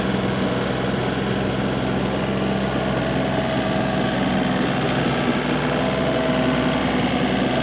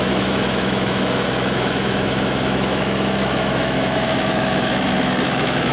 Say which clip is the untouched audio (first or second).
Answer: first